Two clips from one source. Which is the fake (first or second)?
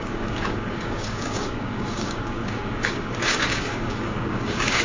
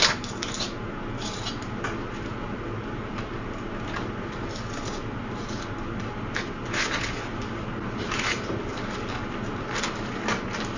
first